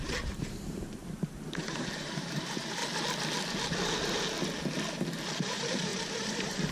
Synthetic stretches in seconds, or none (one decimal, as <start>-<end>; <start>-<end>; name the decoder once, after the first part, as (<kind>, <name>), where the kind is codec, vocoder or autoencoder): 0.0-1.0 (vocoder, BigVGAN v2); 1.6-2.8; 5.4-6.7